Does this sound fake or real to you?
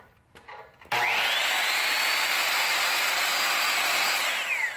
real